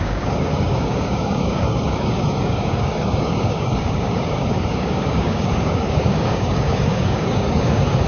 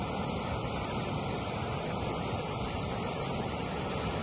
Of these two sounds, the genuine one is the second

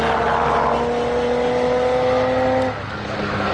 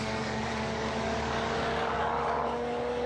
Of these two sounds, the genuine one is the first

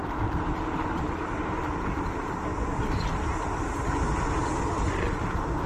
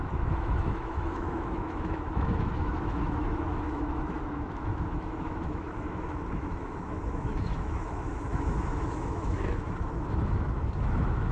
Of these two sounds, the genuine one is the first